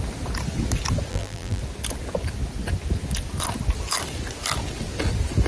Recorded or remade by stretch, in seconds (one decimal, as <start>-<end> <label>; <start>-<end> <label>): 0.0-1.1 recorded; 1.1-1.6 remade; 1.6-5.5 recorded